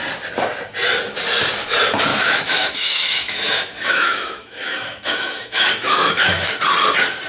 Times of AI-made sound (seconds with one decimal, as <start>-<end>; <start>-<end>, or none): 2.1-6.5